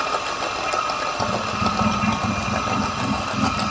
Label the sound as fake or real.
real